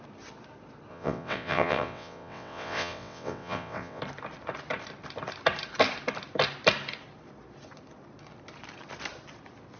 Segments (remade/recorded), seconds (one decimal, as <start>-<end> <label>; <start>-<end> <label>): 0.0-0.9 recorded; 0.9-4.0 remade; 4.0-9.8 recorded